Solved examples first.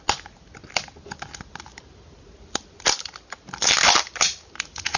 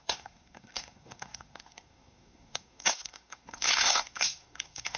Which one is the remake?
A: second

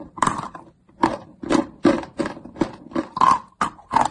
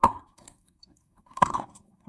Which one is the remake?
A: second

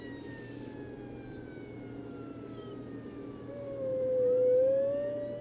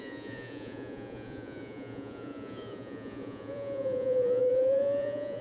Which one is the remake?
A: second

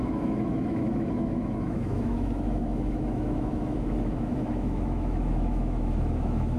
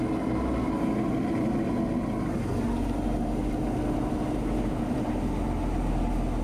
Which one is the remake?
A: first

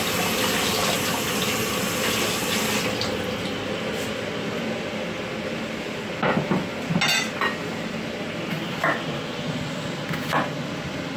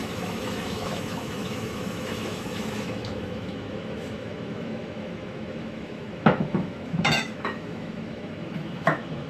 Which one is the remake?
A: second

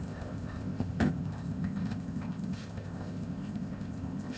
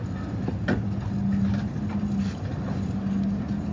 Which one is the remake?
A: first